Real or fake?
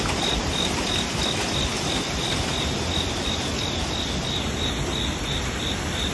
real